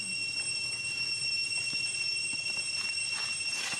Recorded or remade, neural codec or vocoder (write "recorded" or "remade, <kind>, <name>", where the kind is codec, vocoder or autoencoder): recorded